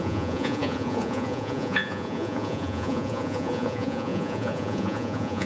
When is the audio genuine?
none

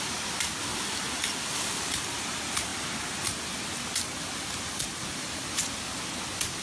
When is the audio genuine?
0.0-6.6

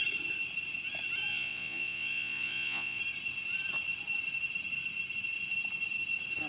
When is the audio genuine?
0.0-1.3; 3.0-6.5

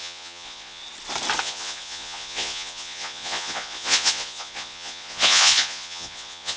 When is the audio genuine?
0.8-1.4